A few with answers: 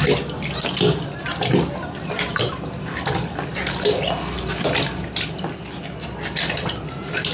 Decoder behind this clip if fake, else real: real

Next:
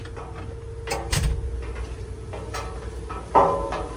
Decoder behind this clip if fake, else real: real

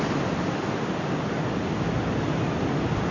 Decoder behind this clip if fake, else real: real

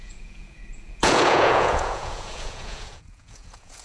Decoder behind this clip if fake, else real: fake, vocoder, Vocos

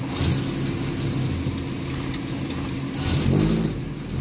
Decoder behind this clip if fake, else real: real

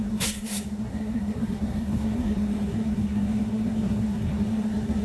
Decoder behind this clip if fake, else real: fake, codec, SNAC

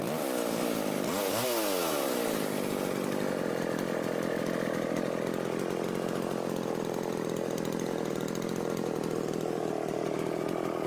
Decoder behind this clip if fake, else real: real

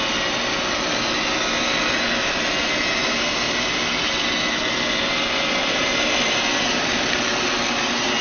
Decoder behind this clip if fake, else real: real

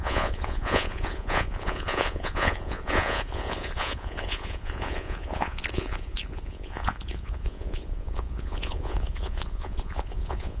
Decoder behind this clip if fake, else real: fake, vocoder, Vocos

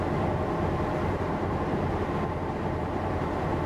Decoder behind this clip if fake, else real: fake, vocoder, BigVGAN v2